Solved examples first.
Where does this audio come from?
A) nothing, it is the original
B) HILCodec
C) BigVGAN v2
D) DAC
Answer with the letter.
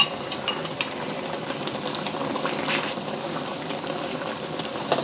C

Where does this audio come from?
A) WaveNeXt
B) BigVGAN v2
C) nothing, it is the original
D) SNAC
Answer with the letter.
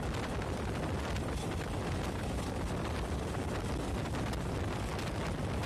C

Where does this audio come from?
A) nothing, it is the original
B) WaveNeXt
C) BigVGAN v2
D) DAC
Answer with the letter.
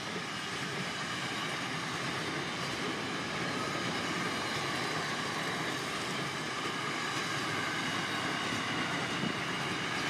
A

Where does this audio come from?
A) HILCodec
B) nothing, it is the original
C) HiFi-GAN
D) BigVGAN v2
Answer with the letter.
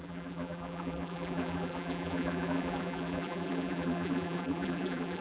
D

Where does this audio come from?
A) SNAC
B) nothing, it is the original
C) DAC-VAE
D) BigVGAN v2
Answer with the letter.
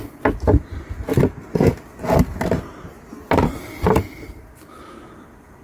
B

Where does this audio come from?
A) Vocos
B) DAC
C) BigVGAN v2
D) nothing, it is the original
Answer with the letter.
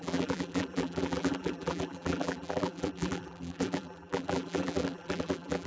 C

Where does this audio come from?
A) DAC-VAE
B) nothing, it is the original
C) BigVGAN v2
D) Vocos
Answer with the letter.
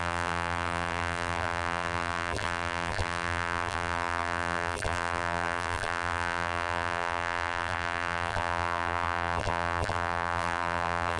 C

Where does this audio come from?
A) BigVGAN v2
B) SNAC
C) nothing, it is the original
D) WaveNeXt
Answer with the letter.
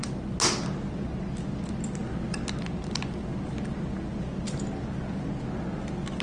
C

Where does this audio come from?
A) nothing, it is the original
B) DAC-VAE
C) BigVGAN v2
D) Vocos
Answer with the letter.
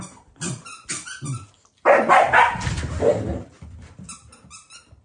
C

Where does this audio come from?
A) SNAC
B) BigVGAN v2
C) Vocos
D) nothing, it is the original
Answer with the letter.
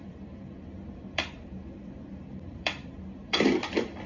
B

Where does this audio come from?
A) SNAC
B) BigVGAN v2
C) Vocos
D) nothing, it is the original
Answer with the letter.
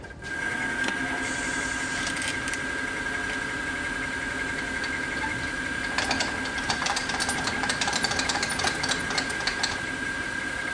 D